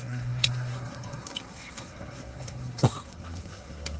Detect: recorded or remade remade